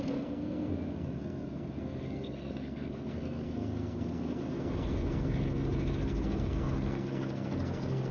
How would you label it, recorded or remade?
remade